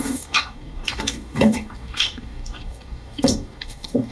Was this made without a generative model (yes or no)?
no